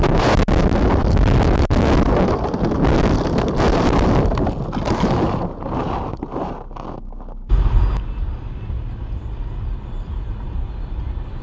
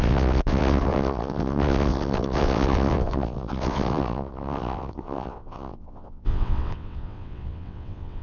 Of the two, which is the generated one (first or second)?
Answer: second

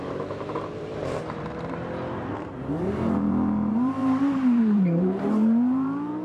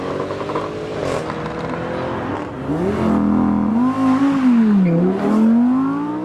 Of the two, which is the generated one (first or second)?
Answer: first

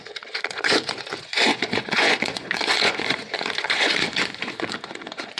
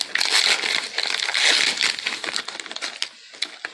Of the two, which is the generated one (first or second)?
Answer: first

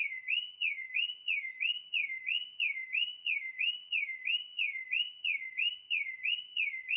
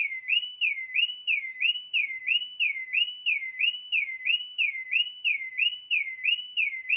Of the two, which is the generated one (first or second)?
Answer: first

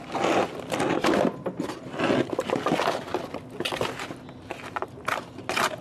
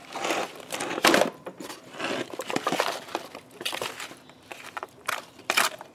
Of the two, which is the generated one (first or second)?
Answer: second